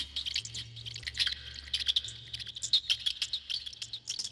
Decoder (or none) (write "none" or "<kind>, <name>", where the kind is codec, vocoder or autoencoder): none